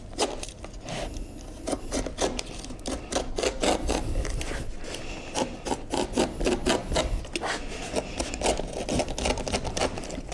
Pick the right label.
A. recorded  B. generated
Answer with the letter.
A